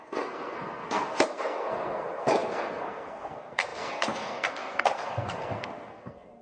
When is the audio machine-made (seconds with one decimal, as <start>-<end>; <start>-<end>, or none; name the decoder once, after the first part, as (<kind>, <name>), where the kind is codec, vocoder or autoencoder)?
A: 0.0-6.4 (codec, SNAC)